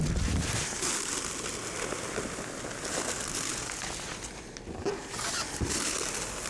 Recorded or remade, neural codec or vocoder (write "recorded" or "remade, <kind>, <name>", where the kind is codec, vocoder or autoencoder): recorded